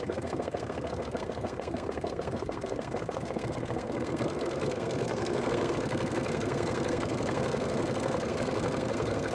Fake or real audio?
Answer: fake